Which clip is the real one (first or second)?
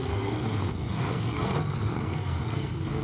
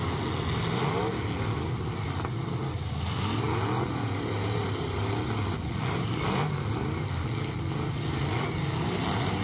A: second